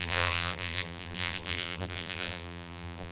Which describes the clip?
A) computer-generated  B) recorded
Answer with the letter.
A